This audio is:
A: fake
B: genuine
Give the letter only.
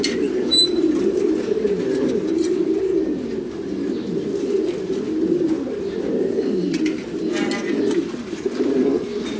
B